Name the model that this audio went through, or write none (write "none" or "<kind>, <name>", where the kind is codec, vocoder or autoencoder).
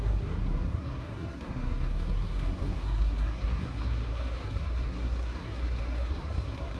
codec, SNAC